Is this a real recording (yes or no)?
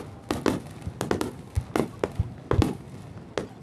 yes